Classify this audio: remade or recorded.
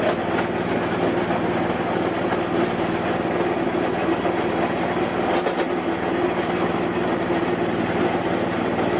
recorded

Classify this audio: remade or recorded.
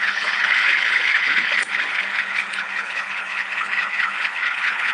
remade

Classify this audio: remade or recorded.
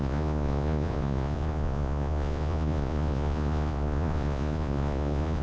remade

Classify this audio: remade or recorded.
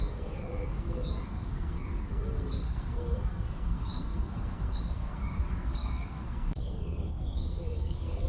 remade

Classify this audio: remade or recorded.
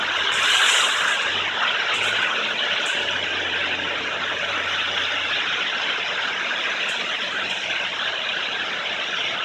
recorded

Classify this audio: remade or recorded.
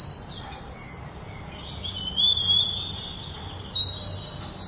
remade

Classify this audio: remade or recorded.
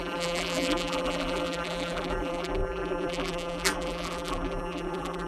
remade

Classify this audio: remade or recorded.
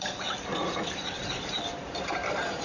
remade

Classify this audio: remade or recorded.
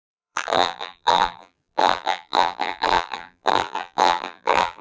remade